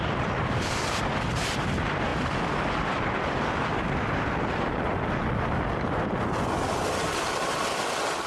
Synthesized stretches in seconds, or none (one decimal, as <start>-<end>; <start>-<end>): none